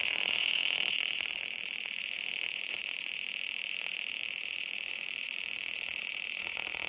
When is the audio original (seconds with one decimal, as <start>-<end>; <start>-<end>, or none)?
none